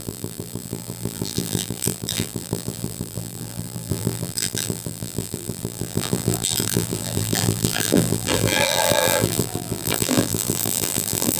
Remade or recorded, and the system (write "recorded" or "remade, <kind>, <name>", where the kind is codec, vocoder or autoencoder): remade, vocoder, BigVGAN v2